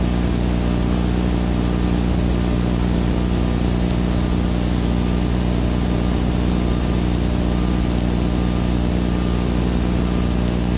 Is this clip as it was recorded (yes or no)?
yes